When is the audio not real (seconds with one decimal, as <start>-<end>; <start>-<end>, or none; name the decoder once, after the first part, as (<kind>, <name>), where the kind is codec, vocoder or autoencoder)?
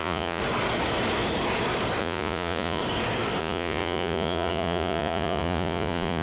0.0-0.4 (vocoder, Vocos); 2.0-2.8; 3.4-6.2